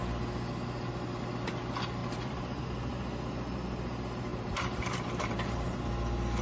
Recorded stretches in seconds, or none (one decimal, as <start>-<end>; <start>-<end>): 0.0-2.0; 2.9-4.3; 5.8-6.4